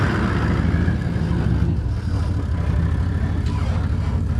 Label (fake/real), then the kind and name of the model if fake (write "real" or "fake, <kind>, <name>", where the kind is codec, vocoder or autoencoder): real